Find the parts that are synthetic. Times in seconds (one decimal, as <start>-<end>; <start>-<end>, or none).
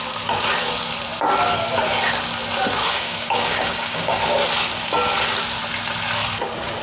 2.8-4.2